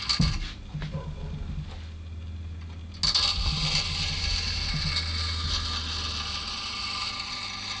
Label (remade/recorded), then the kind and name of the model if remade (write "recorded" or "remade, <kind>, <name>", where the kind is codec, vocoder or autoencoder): recorded